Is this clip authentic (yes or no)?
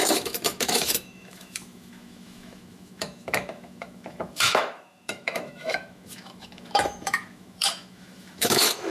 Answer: no